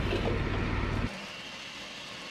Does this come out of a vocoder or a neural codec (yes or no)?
no